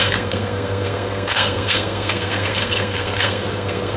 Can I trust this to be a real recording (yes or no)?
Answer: no